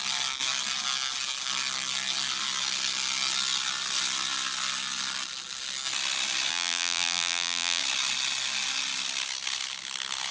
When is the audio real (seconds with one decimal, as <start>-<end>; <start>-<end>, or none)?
0.0-6.5; 7.8-10.3